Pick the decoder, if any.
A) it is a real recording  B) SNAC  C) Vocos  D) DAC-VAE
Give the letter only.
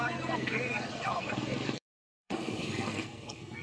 B